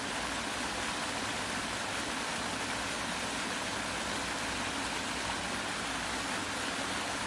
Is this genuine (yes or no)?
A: yes